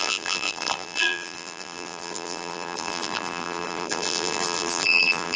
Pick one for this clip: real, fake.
fake